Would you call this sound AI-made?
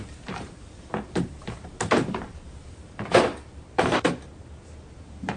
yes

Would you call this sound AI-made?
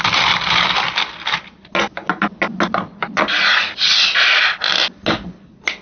no